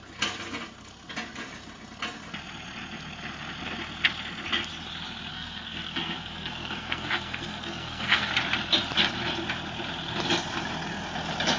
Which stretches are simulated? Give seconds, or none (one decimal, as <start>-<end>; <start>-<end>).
5.3-8.3